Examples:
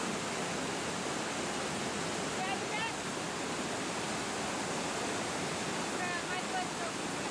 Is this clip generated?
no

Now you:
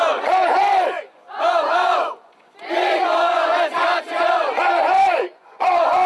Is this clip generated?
yes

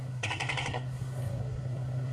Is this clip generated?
yes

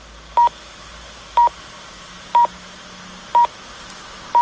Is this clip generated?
no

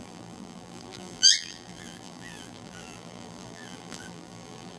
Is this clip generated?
yes